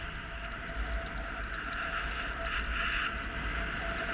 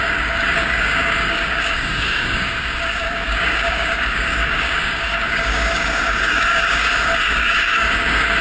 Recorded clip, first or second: first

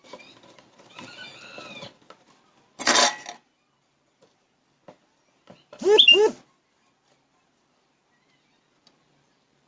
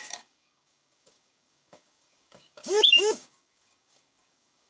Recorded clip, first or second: first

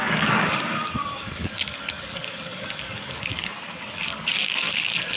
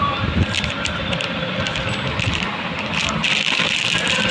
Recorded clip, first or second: second